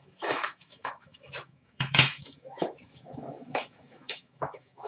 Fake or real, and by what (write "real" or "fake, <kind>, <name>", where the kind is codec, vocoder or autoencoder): fake, autoencoder, DAC-VAE